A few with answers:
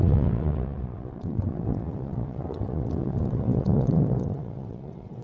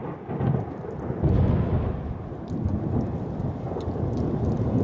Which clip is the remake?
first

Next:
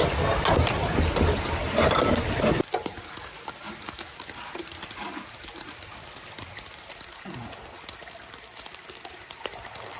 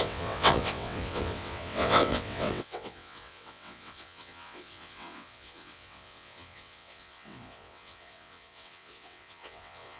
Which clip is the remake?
second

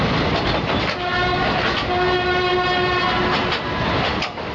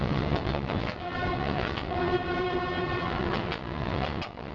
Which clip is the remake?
second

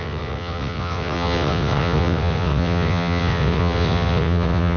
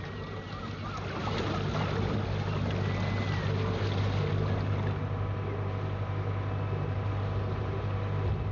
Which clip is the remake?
first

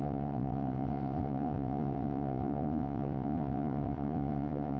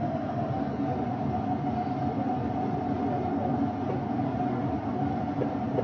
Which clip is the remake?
first